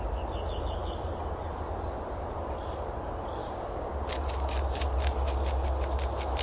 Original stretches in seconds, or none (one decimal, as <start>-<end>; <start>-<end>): 0.0-3.4; 4.1-6.4